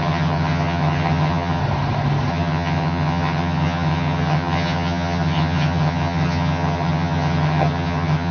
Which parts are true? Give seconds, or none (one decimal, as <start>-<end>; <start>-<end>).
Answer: 1.6-2.3